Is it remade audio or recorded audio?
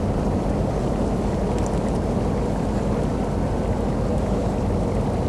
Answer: recorded